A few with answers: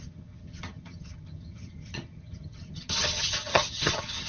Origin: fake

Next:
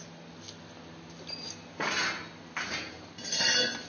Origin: real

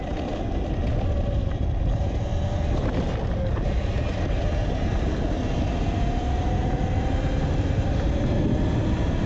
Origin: real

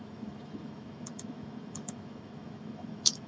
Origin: fake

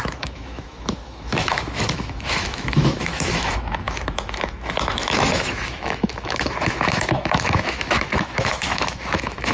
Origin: fake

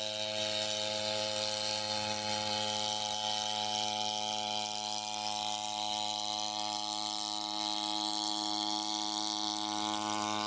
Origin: real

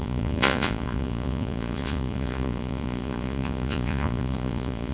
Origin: fake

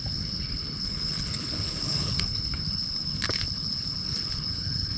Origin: fake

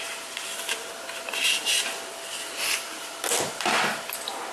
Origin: real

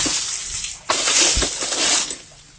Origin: real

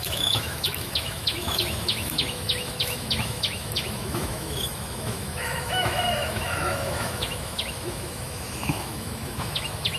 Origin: fake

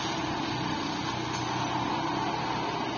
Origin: real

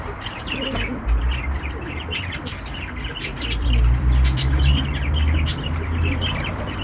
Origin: fake